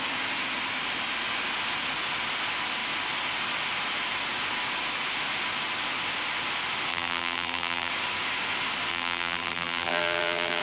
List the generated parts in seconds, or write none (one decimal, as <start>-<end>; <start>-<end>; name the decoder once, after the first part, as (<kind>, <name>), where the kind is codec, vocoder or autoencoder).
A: 6.9-7.9 (vocoder, BigVGAN v2); 8.9-10.6

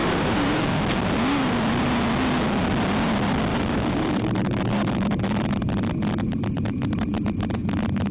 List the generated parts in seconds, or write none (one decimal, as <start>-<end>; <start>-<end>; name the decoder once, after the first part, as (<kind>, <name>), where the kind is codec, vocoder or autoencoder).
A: 0.0-0.6 (vocoder, BigVGAN v2); 3.5-5.2

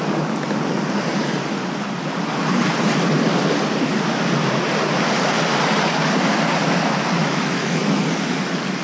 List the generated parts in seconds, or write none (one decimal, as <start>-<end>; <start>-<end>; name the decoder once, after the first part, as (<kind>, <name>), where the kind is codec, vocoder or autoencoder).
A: 7.2-8.0 (autoencoder, DAC-VAE)

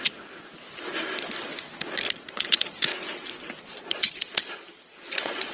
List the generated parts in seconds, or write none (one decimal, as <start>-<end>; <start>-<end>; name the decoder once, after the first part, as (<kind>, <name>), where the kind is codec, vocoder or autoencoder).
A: 0.0-0.5 (vocoder, Vocos); 2.1-2.9; 3.6-5.5

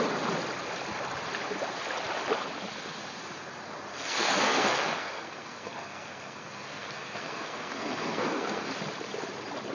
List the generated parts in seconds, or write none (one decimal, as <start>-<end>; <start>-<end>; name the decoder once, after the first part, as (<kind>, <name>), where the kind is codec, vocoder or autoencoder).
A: 3.9-8.7 (codec, SNAC)

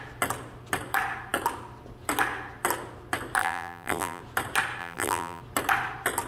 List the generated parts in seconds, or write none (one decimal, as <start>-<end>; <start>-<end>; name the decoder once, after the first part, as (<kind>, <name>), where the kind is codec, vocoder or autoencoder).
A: 3.4-4.2 (vocoder, BigVGAN v2); 4.8-5.4